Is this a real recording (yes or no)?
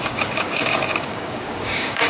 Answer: no